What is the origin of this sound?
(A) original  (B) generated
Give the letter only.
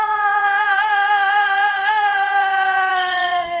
B